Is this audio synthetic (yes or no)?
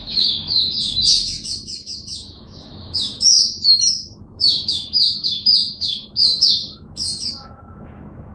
yes